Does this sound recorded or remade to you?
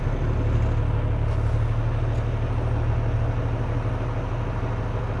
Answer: recorded